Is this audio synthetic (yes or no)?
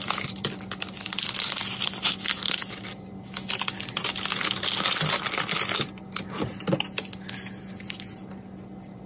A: no